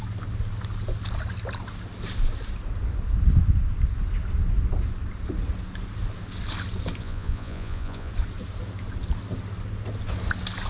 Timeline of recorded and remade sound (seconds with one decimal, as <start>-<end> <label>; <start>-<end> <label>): 0.0-7.0 recorded; 7.0-8.1 remade; 8.1-10.7 recorded

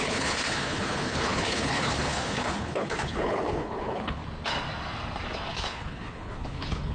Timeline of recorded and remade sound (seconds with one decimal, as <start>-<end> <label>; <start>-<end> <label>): 0.0-4.2 remade; 4.2-5.5 recorded; 5.5-6.9 remade

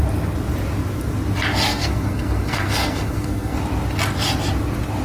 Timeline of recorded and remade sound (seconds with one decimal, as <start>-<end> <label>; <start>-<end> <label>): 0.0-1.7 recorded; 1.7-3.6 remade; 3.6-5.0 recorded

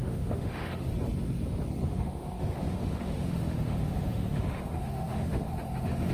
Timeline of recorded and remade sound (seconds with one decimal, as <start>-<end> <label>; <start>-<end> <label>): 0.0-0.9 remade; 0.9-1.9 recorded; 1.9-6.1 remade